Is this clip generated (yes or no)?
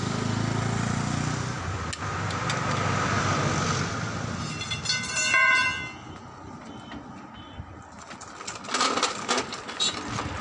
no